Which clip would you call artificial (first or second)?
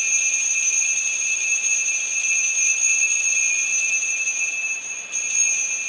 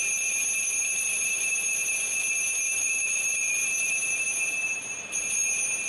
second